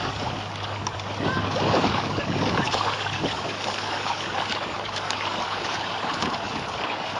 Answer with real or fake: fake